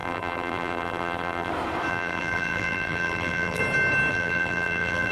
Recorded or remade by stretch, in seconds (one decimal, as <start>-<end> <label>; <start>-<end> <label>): 0.0-1.5 remade; 1.5-1.9 recorded; 1.9-3.6 remade; 3.6-4.1 recorded; 4.1-5.1 remade